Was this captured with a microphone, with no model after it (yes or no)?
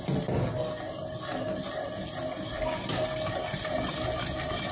yes